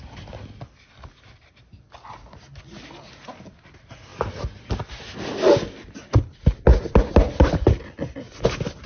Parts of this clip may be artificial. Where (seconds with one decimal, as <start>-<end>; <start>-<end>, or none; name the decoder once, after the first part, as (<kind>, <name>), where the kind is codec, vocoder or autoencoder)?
none